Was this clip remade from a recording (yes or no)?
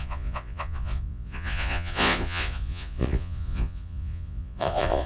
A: yes